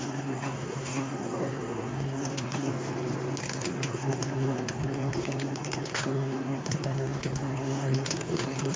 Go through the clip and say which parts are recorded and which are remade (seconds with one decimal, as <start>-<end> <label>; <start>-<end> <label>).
0.0-2.7 remade; 2.7-3.4 recorded; 3.4-8.8 remade